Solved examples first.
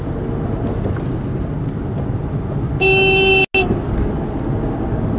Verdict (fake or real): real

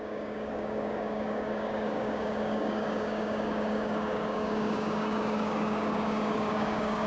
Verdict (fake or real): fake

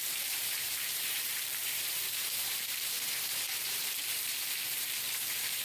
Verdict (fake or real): fake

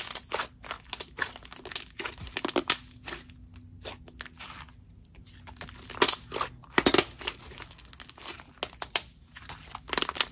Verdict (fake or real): real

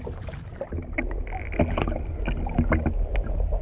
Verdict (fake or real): real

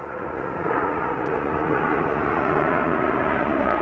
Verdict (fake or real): fake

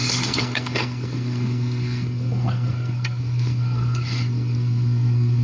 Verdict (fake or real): fake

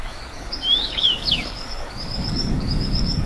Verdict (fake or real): fake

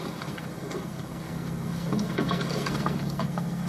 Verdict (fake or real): fake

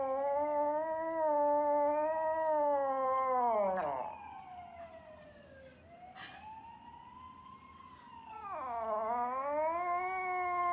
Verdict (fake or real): real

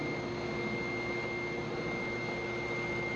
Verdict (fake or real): real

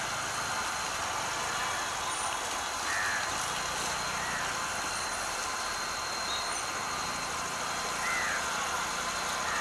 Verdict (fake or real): real